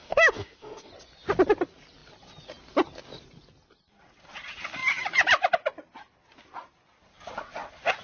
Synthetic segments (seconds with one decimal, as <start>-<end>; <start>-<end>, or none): 0.0-0.9